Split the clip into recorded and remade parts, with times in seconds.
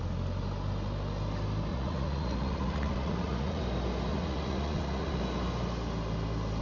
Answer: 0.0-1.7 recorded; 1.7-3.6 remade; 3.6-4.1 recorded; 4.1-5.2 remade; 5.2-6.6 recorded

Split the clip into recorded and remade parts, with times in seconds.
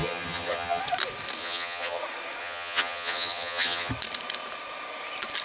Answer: 0.0-0.8 remade; 0.8-1.4 recorded; 1.4-2.0 remade; 2.0-2.4 recorded; 2.4-3.9 remade; 3.9-5.4 recorded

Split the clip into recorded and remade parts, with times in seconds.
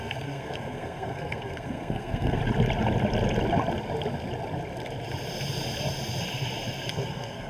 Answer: 0.0-2.4 remade; 2.4-6.9 recorded; 6.9-7.5 remade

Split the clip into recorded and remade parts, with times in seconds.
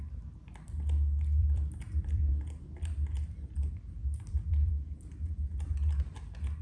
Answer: 0.0-1.4 recorded; 1.4-2.3 remade; 2.3-4.0 recorded; 4.0-4.7 remade; 4.7-6.6 recorded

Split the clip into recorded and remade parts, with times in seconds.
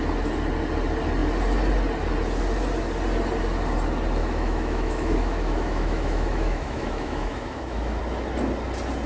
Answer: 0.0-4.2 recorded; 4.2-8.0 remade; 8.0-9.1 recorded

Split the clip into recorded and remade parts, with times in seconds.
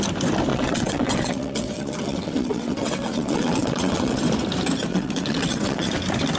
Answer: 0.0-0.5 recorded; 0.5-4.2 remade; 4.2-4.9 recorded; 4.9-5.9 remade; 5.9-6.4 recorded